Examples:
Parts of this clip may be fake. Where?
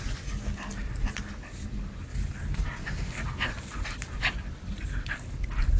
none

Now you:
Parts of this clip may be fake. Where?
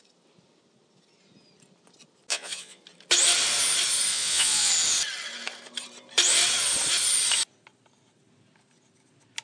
2.3-2.8 (vocoder, Vocos); 4.1-4.7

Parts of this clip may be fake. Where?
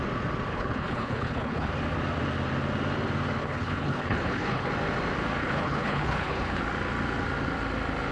0.5-1.7 (codec, HILCodec); 3.4-4.7; 5.4-6.6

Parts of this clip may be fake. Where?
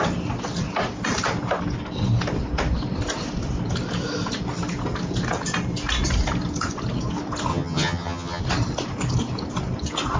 7.5-8.4 (vocoder, HiFi-GAN)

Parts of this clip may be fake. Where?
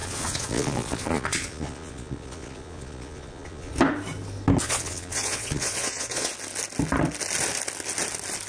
0.0-3.7 (vocoder, Vocos); 4.6-6.3